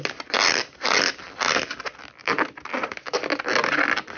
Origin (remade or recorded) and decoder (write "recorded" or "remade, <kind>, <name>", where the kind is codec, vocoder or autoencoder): recorded